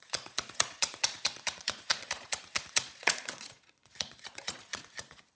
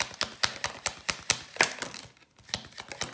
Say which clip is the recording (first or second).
second